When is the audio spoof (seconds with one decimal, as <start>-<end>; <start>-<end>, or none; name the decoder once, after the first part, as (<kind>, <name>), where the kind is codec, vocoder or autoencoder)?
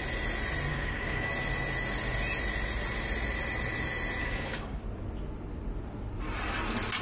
0.7-1.3 (codec, DAC); 4.2-4.8